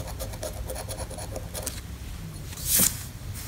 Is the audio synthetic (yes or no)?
no